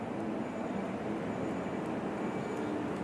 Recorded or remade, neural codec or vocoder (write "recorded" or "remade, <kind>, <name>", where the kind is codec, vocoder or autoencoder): recorded